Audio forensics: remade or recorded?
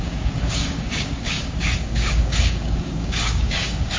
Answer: remade